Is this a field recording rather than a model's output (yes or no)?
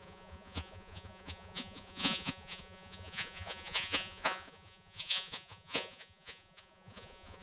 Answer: no